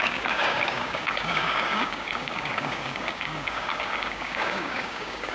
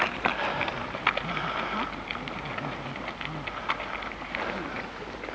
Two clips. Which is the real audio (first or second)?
second